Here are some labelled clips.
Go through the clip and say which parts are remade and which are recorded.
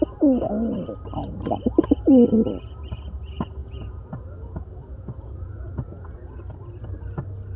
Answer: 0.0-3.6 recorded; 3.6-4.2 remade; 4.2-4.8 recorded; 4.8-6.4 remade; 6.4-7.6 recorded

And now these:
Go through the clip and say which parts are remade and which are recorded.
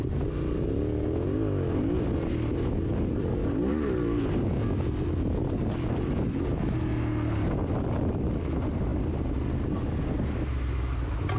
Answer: 0.0-11.4 recorded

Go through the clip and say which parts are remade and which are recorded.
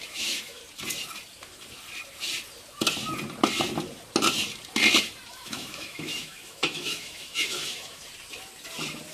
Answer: 0.0-0.6 remade; 0.6-5.3 recorded; 5.3-8.0 remade; 8.0-9.1 recorded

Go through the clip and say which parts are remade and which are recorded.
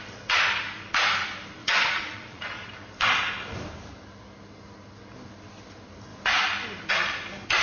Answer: 0.0-1.6 recorded; 1.6-2.7 remade; 2.7-7.6 recorded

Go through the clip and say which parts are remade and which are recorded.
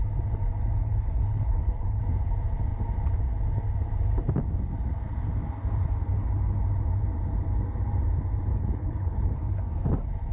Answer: 0.0-0.8 recorded; 0.8-2.0 remade; 2.0-8.5 recorded; 8.5-9.6 remade; 9.6-10.3 recorded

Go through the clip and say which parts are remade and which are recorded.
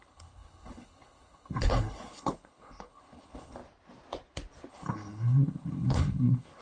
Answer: 0.0-3.6 remade; 3.6-4.7 recorded; 4.7-6.6 remade